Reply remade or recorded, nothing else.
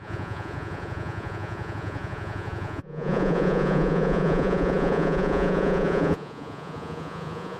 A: remade